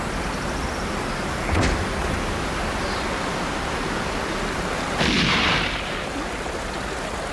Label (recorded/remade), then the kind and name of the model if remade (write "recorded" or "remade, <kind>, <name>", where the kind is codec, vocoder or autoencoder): recorded